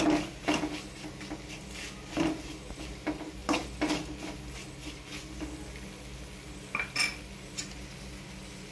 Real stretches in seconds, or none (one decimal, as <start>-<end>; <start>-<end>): 0.0-8.7